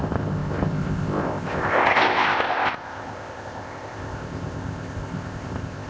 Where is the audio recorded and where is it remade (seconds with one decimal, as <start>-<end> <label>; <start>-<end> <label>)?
0.0-5.9 remade

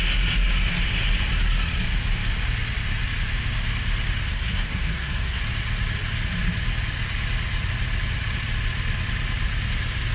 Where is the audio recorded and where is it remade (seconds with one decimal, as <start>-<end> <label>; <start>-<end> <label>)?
0.0-4.3 recorded; 4.3-5.4 remade; 5.4-10.1 recorded

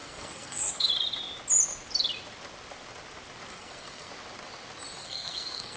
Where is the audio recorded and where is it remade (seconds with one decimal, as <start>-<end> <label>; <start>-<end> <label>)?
0.0-0.9 remade; 0.9-3.5 recorded; 3.5-4.1 remade; 4.1-5.0 recorded; 5.0-5.8 remade

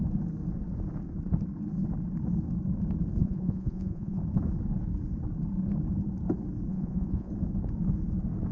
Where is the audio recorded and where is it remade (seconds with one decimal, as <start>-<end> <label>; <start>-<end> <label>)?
0.0-3.2 recorded; 3.2-4.2 remade; 4.2-6.7 recorded; 6.7-7.3 remade; 7.3-8.5 recorded

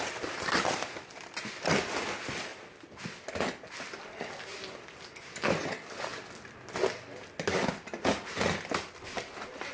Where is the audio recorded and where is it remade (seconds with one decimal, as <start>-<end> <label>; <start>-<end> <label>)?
0.0-9.7 recorded

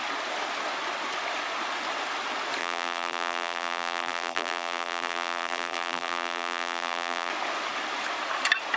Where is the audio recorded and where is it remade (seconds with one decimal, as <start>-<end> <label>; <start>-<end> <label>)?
0.0-2.6 recorded; 2.6-7.3 remade; 7.3-8.8 recorded

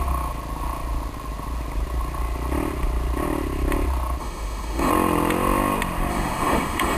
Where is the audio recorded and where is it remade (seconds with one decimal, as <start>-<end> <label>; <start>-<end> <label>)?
0.0-4.2 recorded; 4.2-4.9 remade; 4.9-6.1 recorded; 6.1-7.0 remade

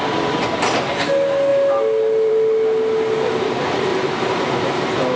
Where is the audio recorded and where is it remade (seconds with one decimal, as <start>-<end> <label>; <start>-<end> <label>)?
0.0-3.9 recorded; 3.9-4.5 remade; 4.5-5.2 recorded